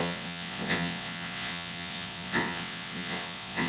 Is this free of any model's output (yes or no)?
no